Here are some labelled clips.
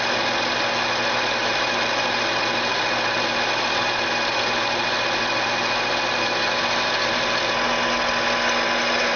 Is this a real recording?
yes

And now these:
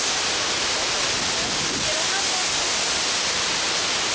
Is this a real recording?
yes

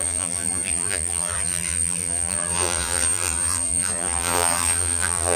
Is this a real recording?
no